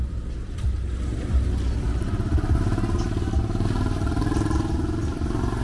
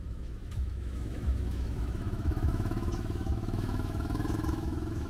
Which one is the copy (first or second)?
second